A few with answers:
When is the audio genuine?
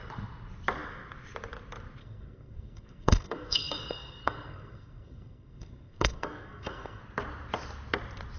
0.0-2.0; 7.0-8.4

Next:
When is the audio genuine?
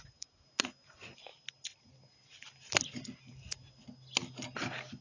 0.0-5.0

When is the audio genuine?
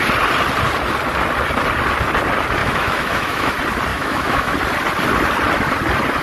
0.0-2.6; 3.5-3.9; 4.5-6.2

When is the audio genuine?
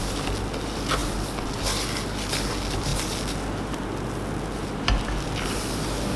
0.0-6.2